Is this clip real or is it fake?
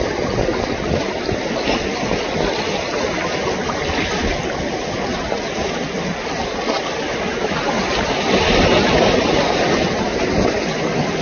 real